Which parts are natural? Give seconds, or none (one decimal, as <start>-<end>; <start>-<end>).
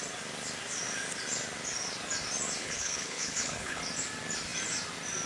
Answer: 0.0-2.6; 3.8-5.3